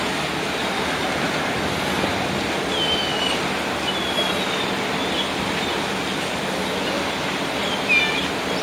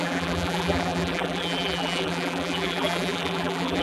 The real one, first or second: first